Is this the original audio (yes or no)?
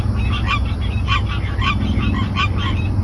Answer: yes